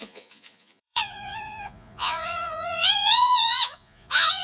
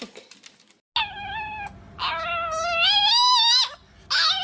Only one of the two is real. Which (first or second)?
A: second